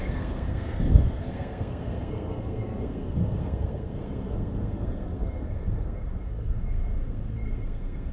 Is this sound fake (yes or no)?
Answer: yes